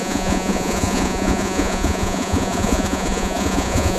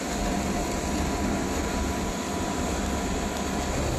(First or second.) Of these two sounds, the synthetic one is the first